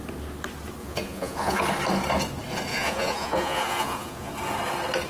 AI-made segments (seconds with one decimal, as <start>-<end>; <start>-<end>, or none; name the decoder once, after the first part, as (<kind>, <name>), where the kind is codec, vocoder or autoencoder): 0.8-1.6 (vocoder, Vocos); 2.7-4.3